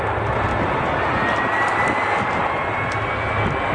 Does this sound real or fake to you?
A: real